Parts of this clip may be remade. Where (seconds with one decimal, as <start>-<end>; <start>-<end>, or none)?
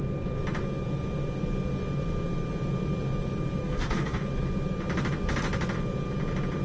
3.6-4.2